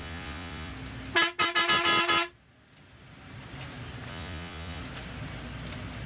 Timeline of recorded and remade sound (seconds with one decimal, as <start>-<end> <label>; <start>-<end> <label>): 0.0-0.7 remade; 0.7-4.1 recorded; 4.1-4.8 remade; 4.8-6.1 recorded